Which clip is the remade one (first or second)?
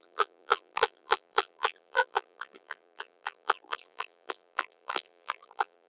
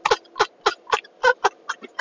first